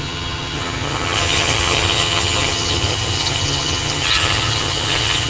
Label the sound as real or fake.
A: fake